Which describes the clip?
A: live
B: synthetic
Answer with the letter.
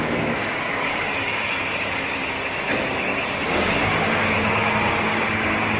B